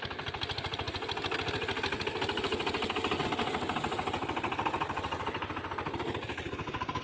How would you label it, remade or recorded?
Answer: recorded